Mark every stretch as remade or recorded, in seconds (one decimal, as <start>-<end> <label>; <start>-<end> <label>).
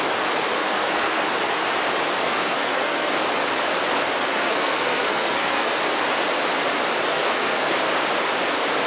0.0-0.6 recorded; 0.6-1.2 remade; 1.2-2.2 recorded; 2.2-3.1 remade; 3.1-4.2 recorded; 4.2-5.7 remade; 5.7-7.1 recorded; 7.1-7.7 remade; 7.7-8.9 recorded